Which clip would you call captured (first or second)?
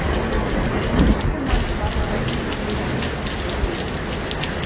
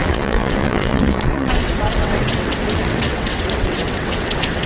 first